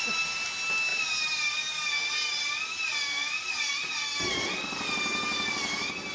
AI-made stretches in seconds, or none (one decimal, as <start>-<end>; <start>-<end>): none